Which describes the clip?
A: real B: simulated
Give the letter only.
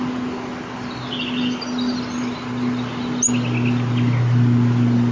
A